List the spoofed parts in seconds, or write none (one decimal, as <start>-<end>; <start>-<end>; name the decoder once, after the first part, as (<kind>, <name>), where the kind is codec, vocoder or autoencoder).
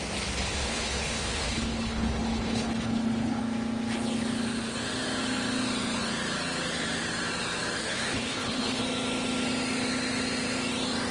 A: 0.5-3.4 (codec, HILCodec); 7.8-8.8